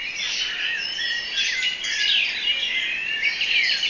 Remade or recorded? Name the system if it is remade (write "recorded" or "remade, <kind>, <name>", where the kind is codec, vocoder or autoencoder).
recorded